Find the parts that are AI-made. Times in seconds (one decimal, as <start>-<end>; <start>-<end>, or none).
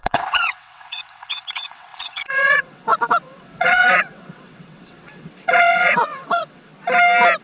0.0-6.7